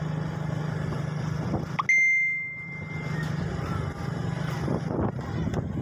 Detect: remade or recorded recorded